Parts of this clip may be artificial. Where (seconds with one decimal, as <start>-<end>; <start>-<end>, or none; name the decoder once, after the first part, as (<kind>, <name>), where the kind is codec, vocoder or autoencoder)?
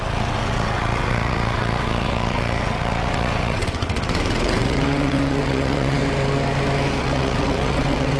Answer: 0.0-6.0 (vocoder, WaveNeXt); 7.0-8.2